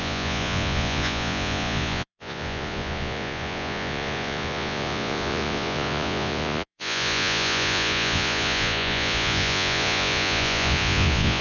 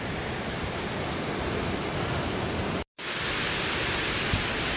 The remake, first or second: first